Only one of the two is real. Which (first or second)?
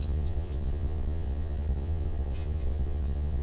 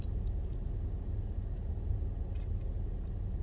second